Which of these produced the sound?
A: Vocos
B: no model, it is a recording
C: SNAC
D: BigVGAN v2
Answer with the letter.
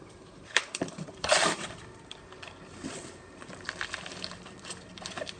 D